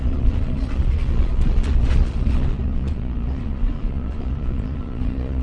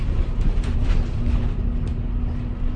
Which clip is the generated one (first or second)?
first